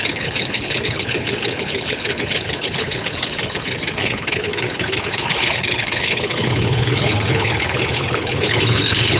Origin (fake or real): fake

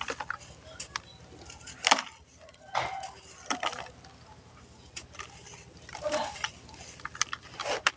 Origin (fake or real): real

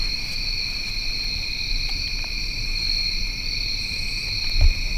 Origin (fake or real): real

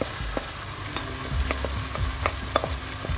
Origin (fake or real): real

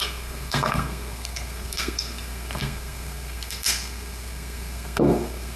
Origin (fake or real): fake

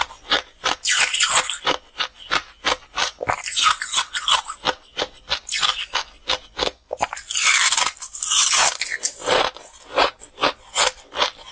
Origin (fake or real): real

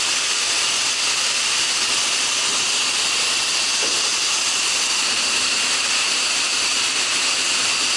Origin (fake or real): fake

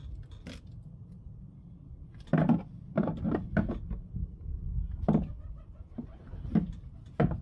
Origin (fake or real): real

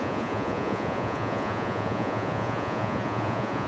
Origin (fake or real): fake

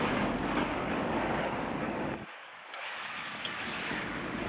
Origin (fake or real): fake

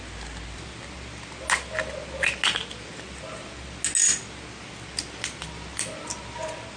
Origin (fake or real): real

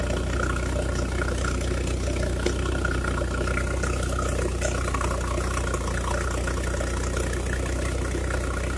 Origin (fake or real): real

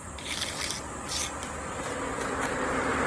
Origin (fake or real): real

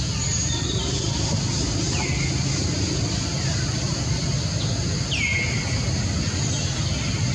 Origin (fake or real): real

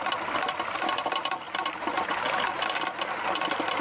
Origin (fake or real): real